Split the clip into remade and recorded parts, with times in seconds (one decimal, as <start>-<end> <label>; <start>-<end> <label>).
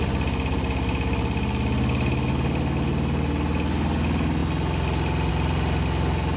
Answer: 0.0-6.4 recorded